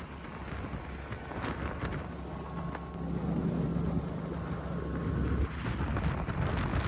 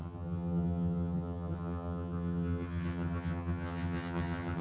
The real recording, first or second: first